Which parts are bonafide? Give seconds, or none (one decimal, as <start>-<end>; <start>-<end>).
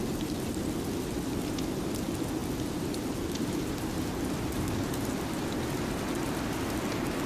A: 0.0-7.3